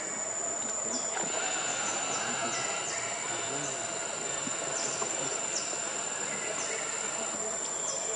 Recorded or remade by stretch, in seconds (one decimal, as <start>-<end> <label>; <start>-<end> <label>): 0.0-8.2 recorded